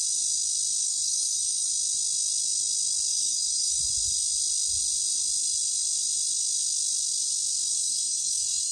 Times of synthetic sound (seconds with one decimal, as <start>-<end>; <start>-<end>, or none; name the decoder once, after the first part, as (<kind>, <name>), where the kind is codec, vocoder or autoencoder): 0.8-1.7 (codec, DAC); 3.1-3.8; 7.7-8.7